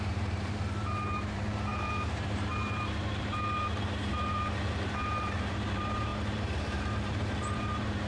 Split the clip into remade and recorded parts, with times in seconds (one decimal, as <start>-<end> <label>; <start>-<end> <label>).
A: 0.0-8.1 remade